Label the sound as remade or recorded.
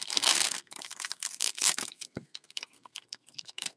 remade